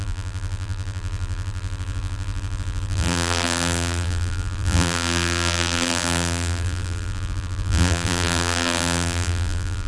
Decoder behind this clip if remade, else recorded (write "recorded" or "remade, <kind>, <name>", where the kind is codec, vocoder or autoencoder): remade, vocoder, BigVGAN v2